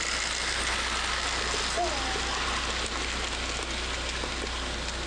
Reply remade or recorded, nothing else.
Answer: recorded